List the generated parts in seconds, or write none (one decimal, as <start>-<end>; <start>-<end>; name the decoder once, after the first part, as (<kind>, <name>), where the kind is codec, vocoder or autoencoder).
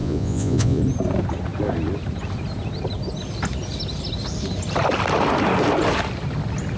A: 0.0-0.8 (vocoder, Vocos)